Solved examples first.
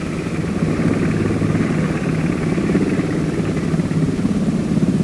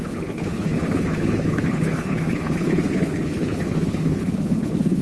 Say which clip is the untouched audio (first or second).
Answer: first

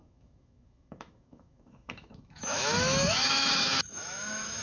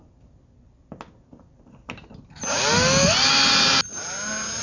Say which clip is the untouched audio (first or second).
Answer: second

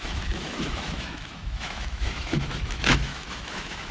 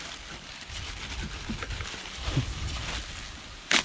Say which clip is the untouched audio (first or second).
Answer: second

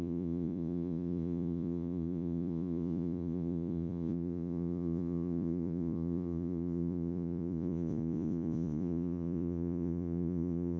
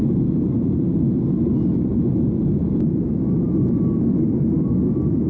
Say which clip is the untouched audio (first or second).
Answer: second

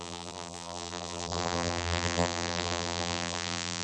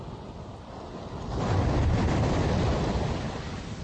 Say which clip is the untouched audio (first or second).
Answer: second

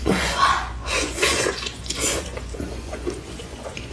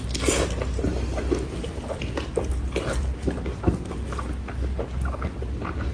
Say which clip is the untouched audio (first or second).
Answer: second